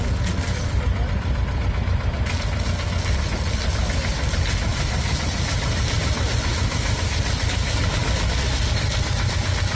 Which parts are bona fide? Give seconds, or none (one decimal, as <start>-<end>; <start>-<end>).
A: 0.0-9.7

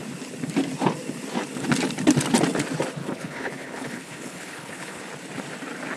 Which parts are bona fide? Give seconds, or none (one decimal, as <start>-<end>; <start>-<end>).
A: 0.0-3.0; 5.0-6.0

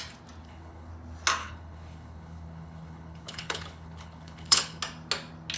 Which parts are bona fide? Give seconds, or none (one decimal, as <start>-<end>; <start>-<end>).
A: 0.0-0.4; 0.9-1.4; 4.8-5.6

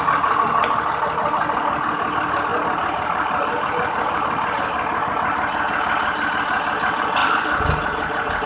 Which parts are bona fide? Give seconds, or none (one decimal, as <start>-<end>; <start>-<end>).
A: 0.0-8.5

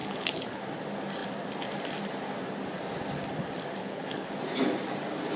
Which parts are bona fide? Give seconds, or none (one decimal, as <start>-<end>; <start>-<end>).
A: 0.6-3.8; 4.3-5.4

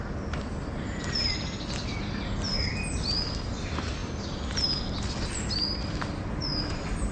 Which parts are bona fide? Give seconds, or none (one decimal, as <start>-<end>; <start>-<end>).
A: 0.0-7.1